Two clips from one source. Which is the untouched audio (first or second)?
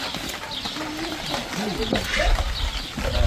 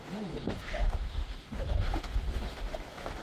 first